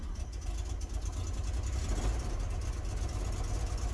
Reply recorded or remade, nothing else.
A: recorded